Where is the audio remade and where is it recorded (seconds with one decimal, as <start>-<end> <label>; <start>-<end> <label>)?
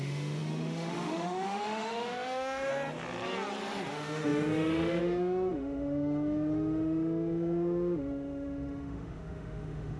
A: 0.0-2.7 remade; 2.7-3.9 recorded; 3.9-10.0 remade